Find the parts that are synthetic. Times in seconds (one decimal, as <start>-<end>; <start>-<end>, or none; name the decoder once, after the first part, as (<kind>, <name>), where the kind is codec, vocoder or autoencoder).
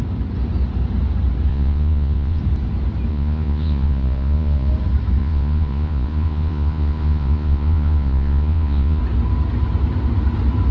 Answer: 1.5-2.4 (vocoder, Vocos); 3.1-4.7; 5.2-9.0